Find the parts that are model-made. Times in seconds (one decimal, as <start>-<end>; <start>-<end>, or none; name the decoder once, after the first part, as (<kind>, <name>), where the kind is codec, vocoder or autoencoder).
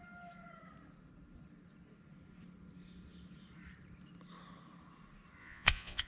5.4-6.1 (vocoder, Vocos)